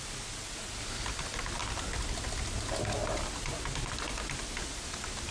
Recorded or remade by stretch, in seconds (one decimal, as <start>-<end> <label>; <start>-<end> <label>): 0.0-5.3 recorded